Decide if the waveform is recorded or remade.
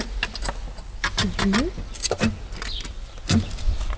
recorded